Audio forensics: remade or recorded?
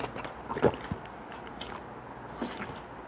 recorded